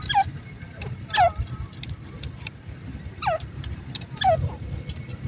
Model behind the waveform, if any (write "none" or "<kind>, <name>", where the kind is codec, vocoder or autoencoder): none